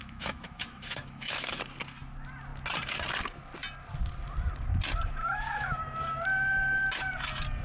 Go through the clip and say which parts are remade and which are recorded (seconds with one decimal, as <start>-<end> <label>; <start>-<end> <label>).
0.0-1.6 remade; 1.6-5.2 recorded; 5.2-5.8 remade; 5.8-7.6 recorded